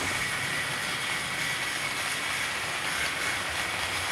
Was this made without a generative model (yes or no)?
yes